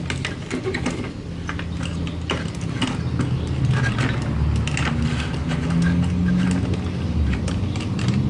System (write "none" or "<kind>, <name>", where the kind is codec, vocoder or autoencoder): none